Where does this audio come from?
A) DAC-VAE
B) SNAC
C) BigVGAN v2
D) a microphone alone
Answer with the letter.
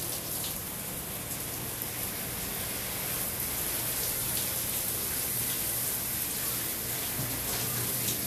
D